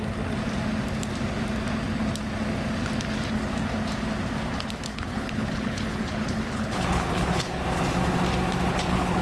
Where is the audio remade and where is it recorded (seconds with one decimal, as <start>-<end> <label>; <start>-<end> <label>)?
0.0-4.9 recorded; 4.9-7.6 remade; 7.6-8.7 recorded; 8.7-9.2 remade